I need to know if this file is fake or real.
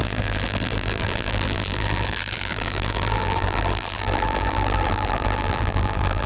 fake